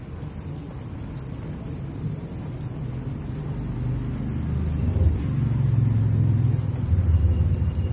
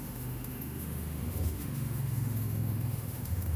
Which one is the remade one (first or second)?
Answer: second